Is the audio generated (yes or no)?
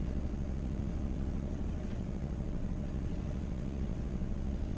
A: yes